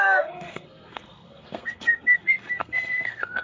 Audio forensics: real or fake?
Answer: fake